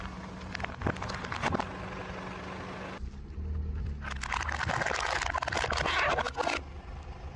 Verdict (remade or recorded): recorded